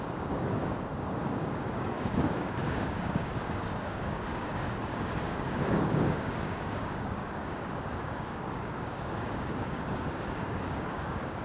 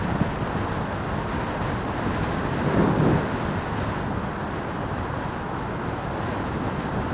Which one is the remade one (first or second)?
first